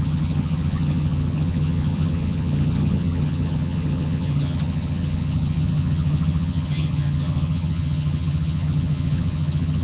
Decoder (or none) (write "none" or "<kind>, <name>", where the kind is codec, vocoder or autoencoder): vocoder, HiFi-GAN